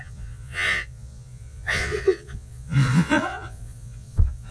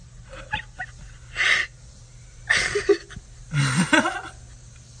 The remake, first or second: first